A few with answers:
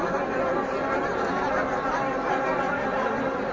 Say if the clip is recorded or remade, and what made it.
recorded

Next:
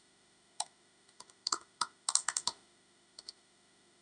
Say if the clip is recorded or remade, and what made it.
remade, autoencoder, DAC-VAE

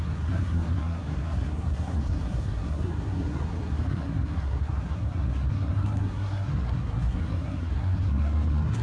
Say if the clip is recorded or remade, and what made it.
remade, codec, SNAC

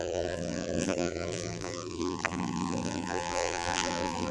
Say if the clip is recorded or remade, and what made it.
remade, vocoder, BigVGAN v2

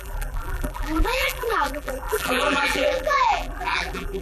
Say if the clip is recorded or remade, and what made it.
remade, vocoder, BigVGAN v2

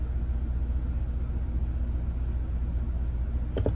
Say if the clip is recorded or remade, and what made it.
recorded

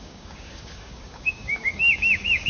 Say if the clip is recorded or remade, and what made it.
remade, codec, DAC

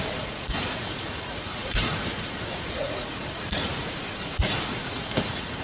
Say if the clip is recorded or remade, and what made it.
remade, vocoder, Vocos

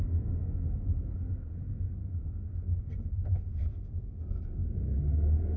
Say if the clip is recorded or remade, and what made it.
remade, codec, SNAC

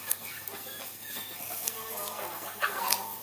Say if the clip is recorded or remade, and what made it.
remade, codec, SNAC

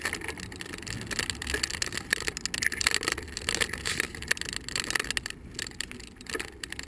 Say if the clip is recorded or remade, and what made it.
recorded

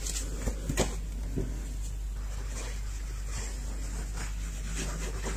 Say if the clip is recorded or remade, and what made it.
recorded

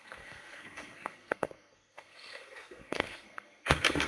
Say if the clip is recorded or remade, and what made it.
remade, codec, SNAC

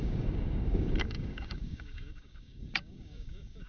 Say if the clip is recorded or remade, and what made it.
remade, codec, DAC